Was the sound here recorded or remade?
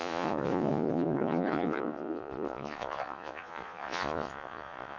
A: remade